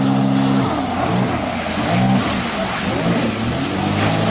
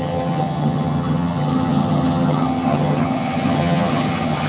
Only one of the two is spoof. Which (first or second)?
second